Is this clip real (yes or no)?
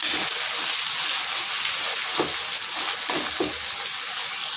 yes